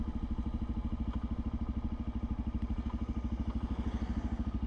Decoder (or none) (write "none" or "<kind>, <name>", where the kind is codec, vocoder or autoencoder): none